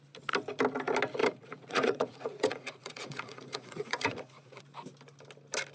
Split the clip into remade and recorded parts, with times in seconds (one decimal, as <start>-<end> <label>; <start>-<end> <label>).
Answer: 0.0-1.2 recorded; 1.2-4.6 remade; 4.6-5.7 recorded